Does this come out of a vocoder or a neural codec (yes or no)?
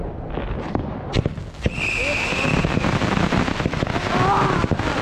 no